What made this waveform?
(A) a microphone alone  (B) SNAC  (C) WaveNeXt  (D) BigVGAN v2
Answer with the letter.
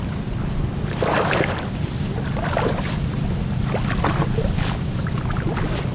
A